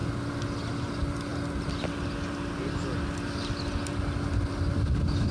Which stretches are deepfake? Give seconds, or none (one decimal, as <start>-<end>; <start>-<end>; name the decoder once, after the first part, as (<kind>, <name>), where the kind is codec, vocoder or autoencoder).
none